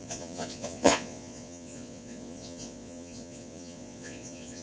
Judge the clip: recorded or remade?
remade